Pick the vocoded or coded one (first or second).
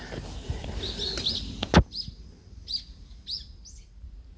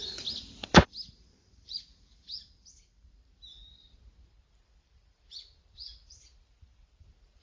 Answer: second